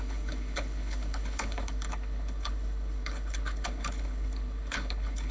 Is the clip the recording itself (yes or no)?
no